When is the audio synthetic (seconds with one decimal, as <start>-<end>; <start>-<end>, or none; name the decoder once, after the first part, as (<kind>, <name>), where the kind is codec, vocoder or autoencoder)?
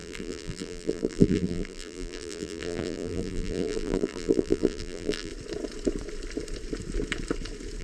0.0-5.3 (vocoder, BigVGAN v2)